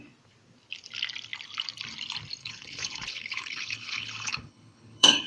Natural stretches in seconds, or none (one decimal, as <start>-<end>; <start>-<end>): 0.0-2.4